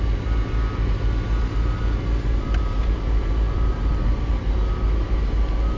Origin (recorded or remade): recorded